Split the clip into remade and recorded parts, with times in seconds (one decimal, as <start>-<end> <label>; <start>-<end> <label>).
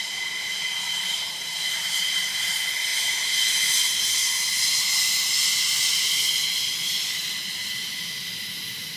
0.0-9.0 recorded